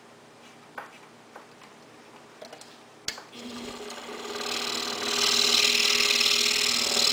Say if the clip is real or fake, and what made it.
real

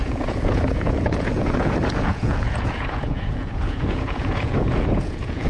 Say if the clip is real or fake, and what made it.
fake, vocoder, Vocos